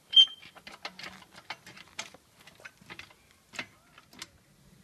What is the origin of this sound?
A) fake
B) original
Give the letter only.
B